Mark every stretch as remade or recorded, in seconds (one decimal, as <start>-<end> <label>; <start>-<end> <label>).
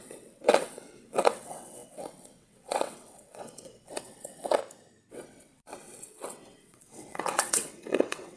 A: 0.0-4.6 remade; 4.6-5.1 recorded; 5.1-8.4 remade